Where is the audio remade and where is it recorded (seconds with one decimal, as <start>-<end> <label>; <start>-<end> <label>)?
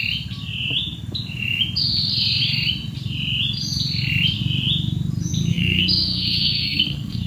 0.0-5.5 recorded; 5.5-7.3 remade